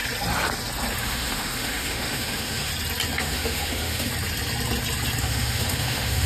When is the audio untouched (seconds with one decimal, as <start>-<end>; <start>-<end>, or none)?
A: 0.0-1.0; 2.7-3.2; 4.1-5.2